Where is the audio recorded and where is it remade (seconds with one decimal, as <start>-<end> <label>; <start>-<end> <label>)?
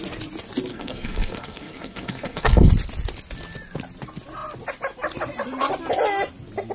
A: 0.0-0.7 recorded; 0.7-2.7 remade; 2.7-6.7 recorded